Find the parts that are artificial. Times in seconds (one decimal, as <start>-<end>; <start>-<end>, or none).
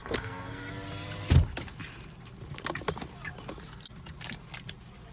0.0-0.7